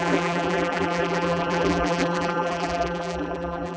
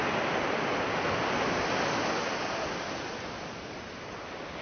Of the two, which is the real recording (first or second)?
second